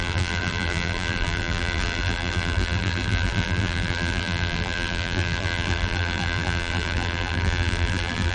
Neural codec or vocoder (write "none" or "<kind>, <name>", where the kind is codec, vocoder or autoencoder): vocoder, BigVGAN v2